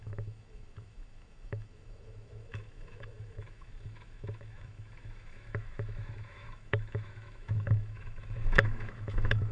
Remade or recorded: remade